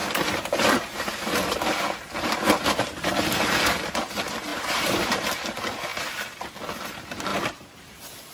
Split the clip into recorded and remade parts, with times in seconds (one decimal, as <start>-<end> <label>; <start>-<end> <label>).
0.0-4.1 remade; 4.1-4.5 recorded; 4.5-5.2 remade; 5.2-7.3 recorded; 7.3-7.9 remade; 7.9-8.3 recorded